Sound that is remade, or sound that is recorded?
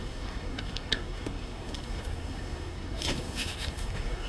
remade